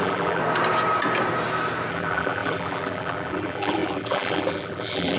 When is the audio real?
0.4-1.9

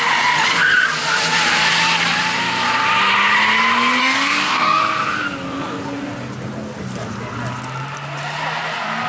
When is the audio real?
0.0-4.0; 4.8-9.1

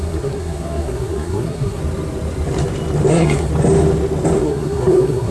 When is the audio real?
1.8-3.1; 3.5-4.4

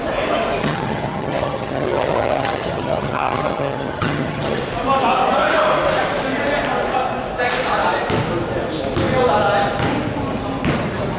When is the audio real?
0.0-0.6; 4.6-11.2

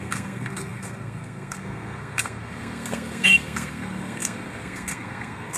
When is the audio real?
none

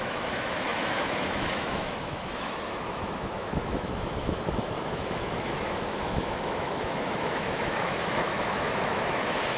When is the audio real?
none